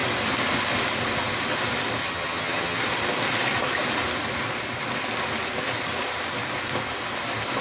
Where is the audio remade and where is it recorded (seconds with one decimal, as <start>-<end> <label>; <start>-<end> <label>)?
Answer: 0.0-2.0 recorded; 2.0-2.8 remade; 2.8-7.6 recorded